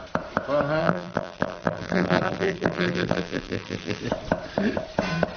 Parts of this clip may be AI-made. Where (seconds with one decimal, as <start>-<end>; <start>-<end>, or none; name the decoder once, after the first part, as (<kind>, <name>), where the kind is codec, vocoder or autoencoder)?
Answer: 0.8-4.0 (vocoder, BigVGAN v2)